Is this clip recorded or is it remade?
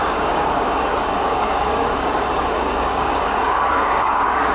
remade